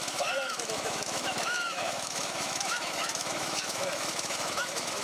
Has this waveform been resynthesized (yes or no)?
yes